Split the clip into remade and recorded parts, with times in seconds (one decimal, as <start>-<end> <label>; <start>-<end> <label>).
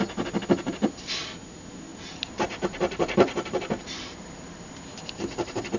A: 0.0-1.9 recorded; 1.9-4.7 remade; 4.7-5.8 recorded